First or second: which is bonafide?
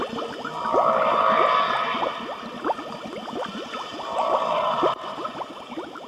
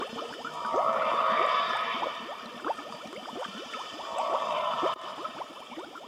first